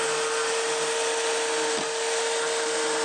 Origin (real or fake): real